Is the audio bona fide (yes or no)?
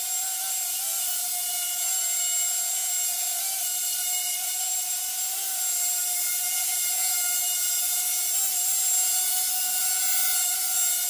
yes